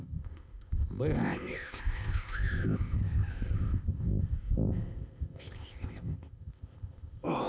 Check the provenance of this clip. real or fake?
fake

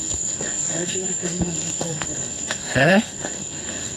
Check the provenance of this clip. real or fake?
fake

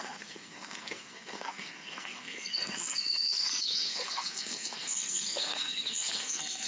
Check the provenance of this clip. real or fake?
fake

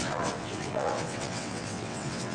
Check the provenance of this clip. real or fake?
fake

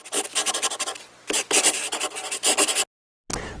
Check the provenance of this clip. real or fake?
real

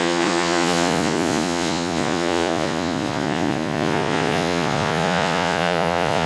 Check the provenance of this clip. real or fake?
fake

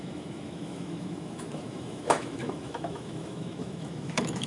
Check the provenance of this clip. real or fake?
fake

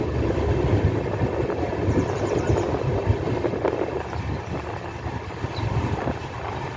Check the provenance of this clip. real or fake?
real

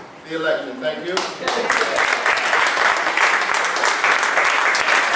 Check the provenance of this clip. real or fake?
real